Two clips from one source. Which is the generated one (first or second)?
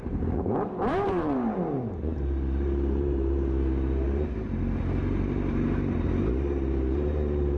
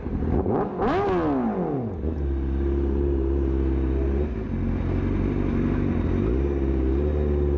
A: first